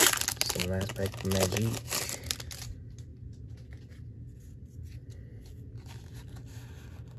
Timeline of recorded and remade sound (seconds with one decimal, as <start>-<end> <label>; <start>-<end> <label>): 0.0-7.2 recorded